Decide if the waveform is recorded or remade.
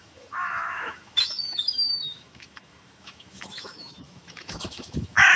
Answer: remade